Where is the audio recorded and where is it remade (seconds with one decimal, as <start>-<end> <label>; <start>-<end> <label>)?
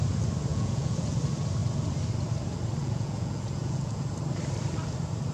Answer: 0.0-0.5 recorded; 0.5-1.2 remade; 1.2-2.8 recorded; 2.8-4.1 remade; 4.1-5.3 recorded